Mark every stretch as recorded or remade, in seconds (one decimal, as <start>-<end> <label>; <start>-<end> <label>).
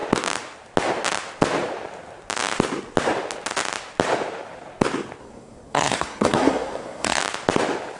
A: 0.0-5.2 recorded; 5.2-7.2 remade; 7.2-8.0 recorded